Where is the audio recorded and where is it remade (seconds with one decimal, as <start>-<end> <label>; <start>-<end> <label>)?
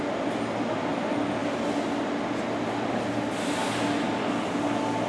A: 0.0-5.1 recorded